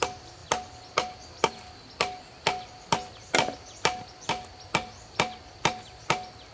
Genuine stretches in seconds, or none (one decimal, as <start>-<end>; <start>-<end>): 0.0-6.5